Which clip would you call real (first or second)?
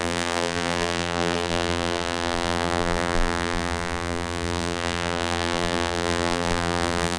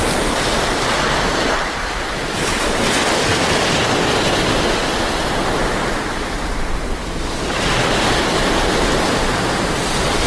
second